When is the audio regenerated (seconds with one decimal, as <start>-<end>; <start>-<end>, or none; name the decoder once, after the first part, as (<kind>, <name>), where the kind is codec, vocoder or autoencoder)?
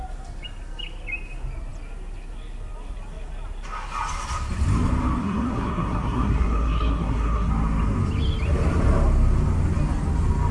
5.2-7.5 (codec, SNAC)